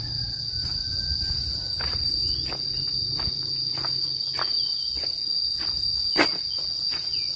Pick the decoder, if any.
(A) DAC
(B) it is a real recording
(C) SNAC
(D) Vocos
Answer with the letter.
B